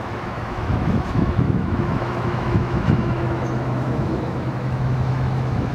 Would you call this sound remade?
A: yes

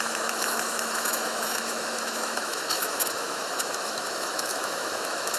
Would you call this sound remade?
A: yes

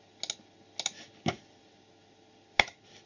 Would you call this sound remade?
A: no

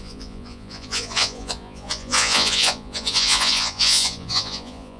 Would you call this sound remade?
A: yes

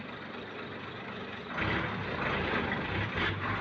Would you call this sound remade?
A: no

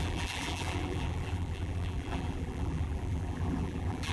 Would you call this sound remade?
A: yes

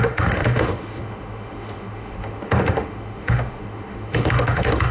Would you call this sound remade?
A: yes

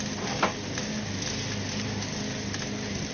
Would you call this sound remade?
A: no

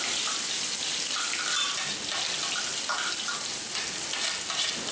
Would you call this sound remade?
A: no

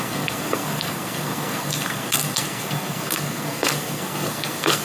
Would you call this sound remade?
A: yes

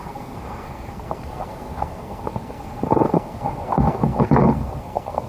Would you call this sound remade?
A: yes